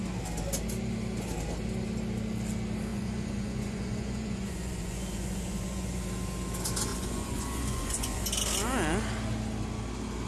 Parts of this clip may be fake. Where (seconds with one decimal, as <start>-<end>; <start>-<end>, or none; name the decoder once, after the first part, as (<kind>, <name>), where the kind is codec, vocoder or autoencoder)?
2.9-6.0 (vocoder, Vocos); 6.9-8.2